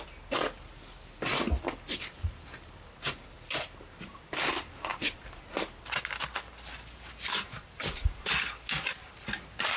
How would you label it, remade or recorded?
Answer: recorded